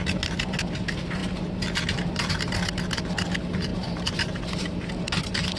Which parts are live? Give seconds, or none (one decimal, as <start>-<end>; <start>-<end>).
0.0-3.7; 4.9-5.6